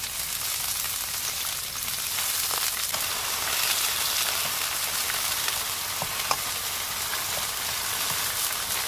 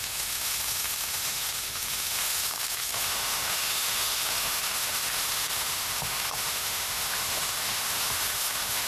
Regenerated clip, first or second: second